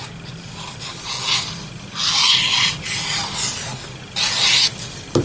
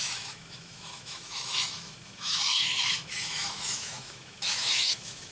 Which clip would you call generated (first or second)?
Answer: second